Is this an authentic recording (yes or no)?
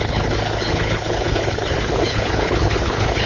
no